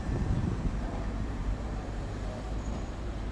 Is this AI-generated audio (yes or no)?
yes